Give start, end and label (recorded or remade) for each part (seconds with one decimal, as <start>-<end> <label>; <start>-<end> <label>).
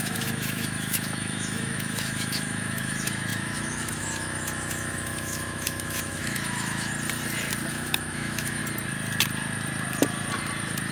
0.0-6.9 remade; 6.9-7.7 recorded; 7.7-8.6 remade; 8.6-10.9 recorded